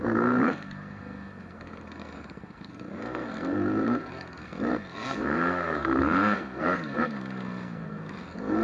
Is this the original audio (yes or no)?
no